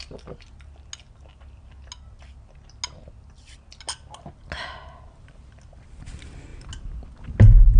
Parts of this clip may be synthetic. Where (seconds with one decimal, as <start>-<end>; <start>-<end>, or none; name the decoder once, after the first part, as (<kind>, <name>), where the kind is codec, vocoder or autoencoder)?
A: none